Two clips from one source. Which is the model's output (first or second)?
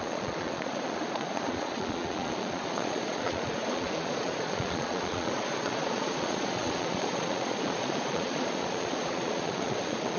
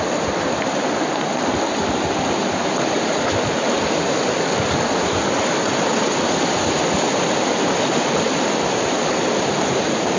first